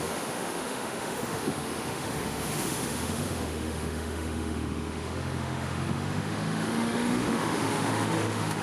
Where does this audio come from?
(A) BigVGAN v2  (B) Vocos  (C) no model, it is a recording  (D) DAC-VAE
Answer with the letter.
D